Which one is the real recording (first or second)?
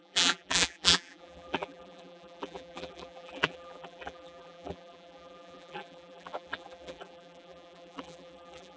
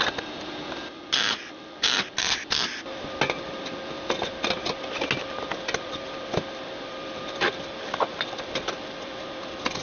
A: second